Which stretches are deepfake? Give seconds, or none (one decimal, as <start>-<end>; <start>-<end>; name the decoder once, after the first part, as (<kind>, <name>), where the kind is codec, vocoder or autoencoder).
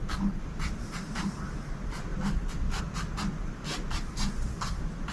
none